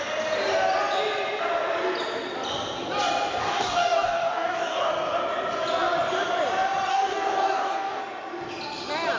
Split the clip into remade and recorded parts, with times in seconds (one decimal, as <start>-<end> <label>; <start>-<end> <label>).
0.0-3.4 recorded; 3.4-4.9 remade; 4.9-6.9 recorded; 6.9-8.0 remade; 8.0-9.2 recorded